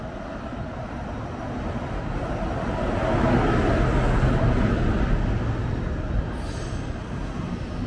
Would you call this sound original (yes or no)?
yes